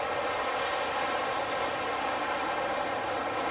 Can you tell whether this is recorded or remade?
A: recorded